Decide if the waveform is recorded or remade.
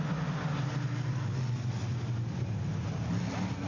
recorded